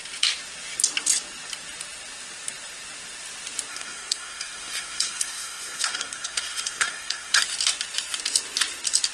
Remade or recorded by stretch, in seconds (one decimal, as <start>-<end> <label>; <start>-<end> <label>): 0.0-3.7 recorded; 3.7-7.4 remade; 7.4-9.1 recorded

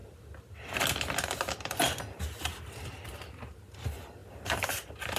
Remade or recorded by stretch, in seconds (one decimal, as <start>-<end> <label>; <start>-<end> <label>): 0.0-5.2 recorded

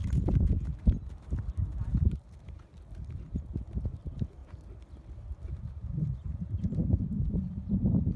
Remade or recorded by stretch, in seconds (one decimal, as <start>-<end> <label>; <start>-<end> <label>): 0.0-2.7 remade; 2.7-3.8 recorded; 3.8-4.4 remade; 4.4-5.5 recorded; 5.5-8.2 remade

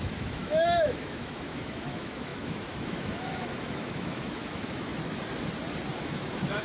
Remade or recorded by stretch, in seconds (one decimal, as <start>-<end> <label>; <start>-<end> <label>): 0.0-4.9 remade; 4.9-6.0 recorded; 6.0-6.6 remade

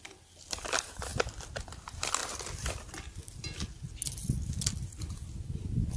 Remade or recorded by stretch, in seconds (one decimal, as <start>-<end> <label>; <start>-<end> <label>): 0.0-2.2 remade; 2.2-6.0 recorded

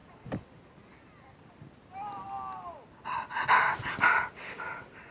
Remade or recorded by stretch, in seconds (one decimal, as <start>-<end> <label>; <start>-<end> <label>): 0.0-5.1 recorded

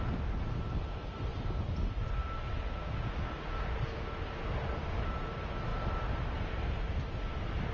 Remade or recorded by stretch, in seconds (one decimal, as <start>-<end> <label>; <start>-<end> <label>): 0.0-7.7 recorded

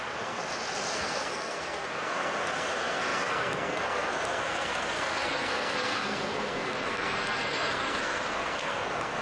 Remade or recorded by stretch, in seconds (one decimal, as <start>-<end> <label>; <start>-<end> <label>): 0.0-0.4 remade; 0.4-0.9 recorded; 0.9-9.2 remade